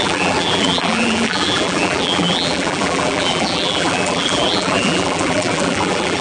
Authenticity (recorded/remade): remade